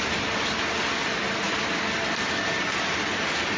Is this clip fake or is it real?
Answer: real